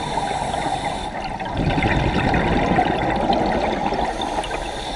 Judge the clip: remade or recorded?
recorded